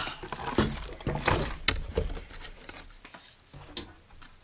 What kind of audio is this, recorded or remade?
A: recorded